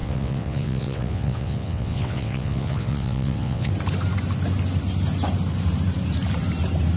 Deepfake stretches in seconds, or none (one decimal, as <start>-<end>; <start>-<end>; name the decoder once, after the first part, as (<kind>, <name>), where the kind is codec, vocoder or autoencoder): 0.0-3.7 (vocoder, WaveNeXt)